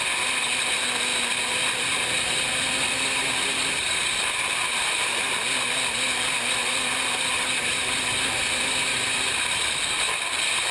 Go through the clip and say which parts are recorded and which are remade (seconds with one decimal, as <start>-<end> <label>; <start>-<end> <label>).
0.0-10.7 recorded